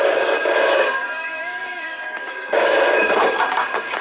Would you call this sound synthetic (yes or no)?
yes